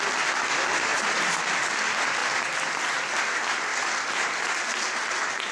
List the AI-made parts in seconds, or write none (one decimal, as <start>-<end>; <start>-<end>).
0.9-1.6; 2.2-3.2; 3.7-4.5